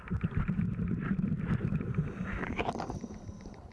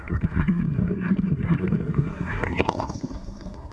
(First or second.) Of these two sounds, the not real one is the second